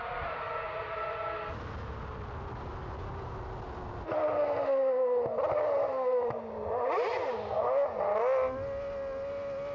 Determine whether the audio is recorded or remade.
recorded